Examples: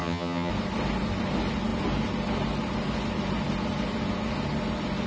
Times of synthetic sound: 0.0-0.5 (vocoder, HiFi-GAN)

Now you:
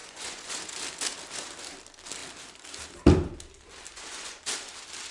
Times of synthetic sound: 0.0-0.7 (vocoder, Vocos); 3.9-4.4

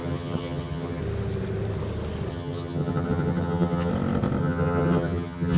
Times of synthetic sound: 0.0-1.0 (vocoder, HiFi-GAN); 2.3-3.9; 4.4-5.6

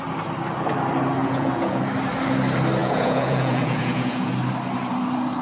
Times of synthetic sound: 1.2-1.8 (vocoder, Vocos); 2.8-4.3

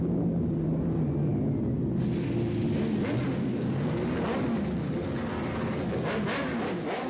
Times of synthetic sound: none